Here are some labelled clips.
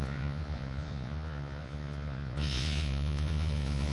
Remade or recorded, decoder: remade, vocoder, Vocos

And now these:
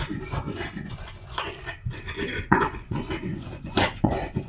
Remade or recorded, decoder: remade, vocoder, Vocos